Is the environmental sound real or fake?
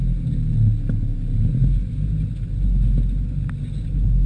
real